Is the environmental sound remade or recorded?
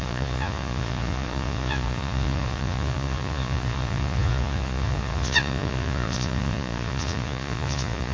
remade